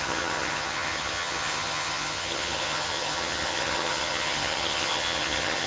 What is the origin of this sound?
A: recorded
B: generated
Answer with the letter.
B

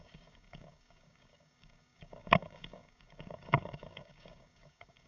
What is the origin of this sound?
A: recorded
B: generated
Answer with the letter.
B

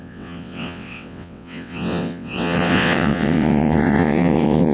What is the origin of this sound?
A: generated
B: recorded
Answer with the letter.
A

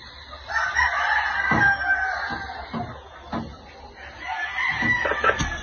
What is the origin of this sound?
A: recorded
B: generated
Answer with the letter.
A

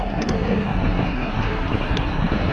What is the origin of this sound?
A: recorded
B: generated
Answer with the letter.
B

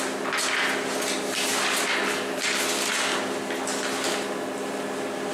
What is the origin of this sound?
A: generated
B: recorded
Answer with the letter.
B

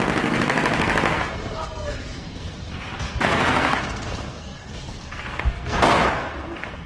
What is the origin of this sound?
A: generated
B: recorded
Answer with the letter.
A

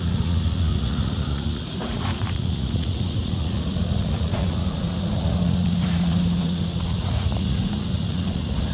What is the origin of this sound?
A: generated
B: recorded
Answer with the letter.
A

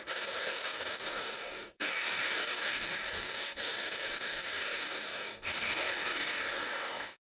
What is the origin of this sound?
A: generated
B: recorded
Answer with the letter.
A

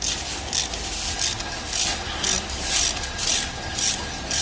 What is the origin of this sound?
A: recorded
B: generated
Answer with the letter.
A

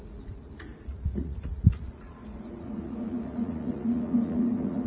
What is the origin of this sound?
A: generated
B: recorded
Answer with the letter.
A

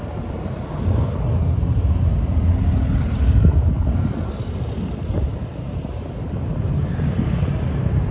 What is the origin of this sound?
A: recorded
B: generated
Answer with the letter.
A